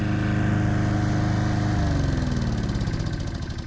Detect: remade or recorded recorded